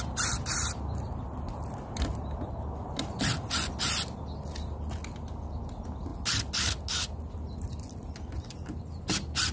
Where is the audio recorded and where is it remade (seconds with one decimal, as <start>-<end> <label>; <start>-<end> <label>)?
0.0-9.5 recorded